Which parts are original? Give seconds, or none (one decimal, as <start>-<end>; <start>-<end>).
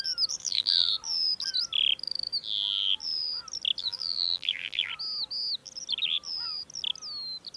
0.0-0.4; 0.9-3.8; 4.9-7.6